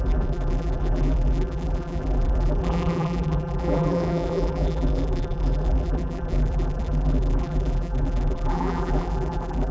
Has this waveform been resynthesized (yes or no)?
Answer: yes